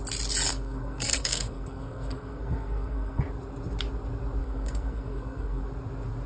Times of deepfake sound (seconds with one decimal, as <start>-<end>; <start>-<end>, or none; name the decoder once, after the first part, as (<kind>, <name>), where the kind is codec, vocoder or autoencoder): 0.5-3.2 (codec, SNAC); 4.4-5.7

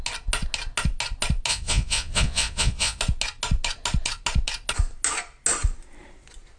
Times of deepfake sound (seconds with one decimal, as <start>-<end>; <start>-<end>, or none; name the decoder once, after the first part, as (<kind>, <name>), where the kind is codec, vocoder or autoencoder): 1.5-3.0 (vocoder, Vocos)

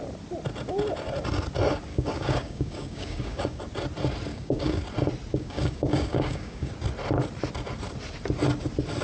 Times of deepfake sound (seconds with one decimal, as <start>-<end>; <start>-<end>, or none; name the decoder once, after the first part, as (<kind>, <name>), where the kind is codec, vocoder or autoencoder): 1.9-3.6 (codec, DAC); 4.3-4.8; 5.3-6.7

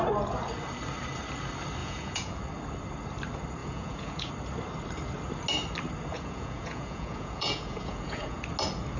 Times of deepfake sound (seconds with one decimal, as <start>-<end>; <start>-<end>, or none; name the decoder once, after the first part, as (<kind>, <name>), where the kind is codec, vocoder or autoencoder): 1.8-2.4 (vocoder, Vocos); 3.6-4.3; 6.1-8.4

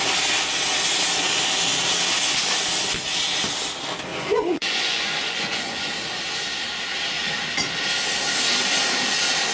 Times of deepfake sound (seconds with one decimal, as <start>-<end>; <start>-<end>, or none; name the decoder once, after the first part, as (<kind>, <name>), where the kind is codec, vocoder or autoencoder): 4.1-5.9 (vocoder, Vocos)